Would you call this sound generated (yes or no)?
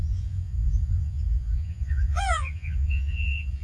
yes